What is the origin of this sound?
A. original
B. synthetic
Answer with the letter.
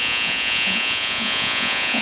B